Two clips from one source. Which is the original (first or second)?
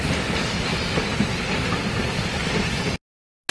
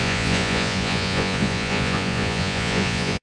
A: first